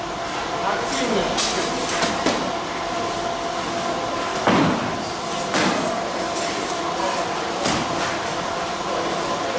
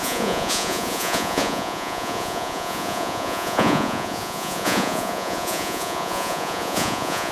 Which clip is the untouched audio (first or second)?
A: first